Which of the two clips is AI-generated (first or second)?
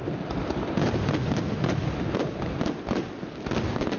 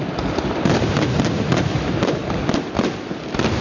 second